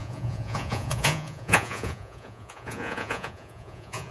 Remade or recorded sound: remade